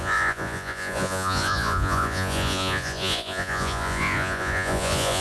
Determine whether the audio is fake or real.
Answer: fake